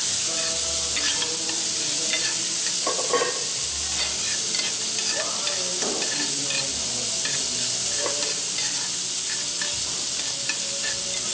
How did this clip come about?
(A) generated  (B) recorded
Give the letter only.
B